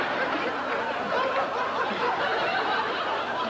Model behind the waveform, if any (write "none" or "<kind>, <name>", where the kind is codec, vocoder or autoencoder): none